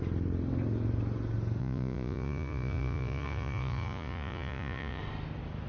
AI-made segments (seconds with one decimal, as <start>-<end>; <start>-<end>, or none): 1.6-5.0